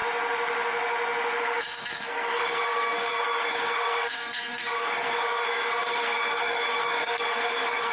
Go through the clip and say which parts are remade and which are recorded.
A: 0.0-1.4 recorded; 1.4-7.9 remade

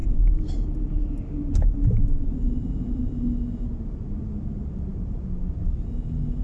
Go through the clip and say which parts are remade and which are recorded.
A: 0.0-6.4 recorded

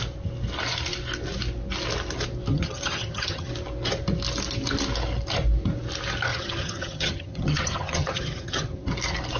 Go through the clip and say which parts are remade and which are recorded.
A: 0.0-2.5 recorded; 2.5-3.5 remade; 3.5-6.3 recorded; 6.3-8.9 remade; 8.9-9.4 recorded

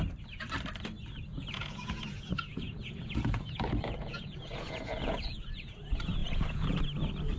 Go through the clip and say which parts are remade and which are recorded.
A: 0.0-1.3 recorded; 1.3-5.7 remade; 5.7-6.2 recorded; 6.2-6.8 remade; 6.8-7.4 recorded

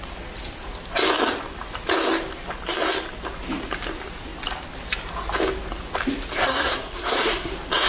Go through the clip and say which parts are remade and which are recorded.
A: 0.0-6.3 recorded; 6.3-7.5 remade; 7.5-7.9 recorded